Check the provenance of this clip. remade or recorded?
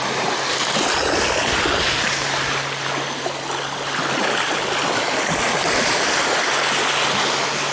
recorded